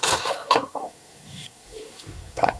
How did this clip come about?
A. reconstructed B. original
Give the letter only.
A